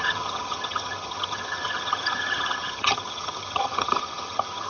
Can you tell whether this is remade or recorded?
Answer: remade